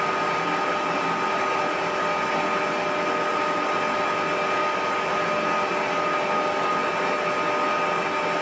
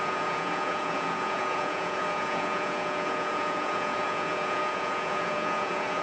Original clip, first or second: first